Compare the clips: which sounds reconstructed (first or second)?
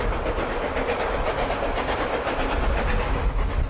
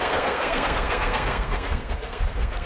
second